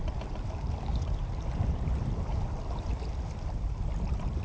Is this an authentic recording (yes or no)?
yes